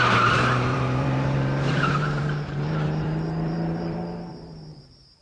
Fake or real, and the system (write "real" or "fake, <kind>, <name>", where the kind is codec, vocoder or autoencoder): fake, vocoder, BigVGAN v2